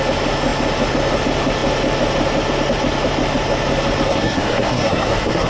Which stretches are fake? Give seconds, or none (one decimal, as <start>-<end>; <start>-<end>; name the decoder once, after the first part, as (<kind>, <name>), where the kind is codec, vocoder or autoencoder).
4.1-5.5 (codec, SNAC)